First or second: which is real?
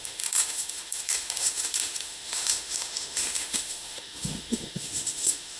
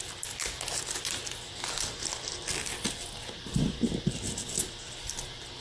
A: second